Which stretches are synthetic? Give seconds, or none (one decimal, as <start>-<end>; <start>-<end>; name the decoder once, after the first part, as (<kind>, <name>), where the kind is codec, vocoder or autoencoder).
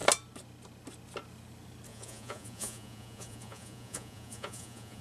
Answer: 1.9-5.0 (vocoder, Vocos)